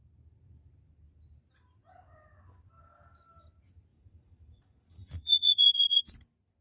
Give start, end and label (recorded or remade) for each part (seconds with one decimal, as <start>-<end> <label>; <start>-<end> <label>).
0.0-3.9 recorded; 3.9-6.0 remade; 6.0-6.6 recorded